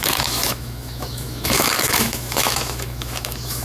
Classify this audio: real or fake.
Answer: fake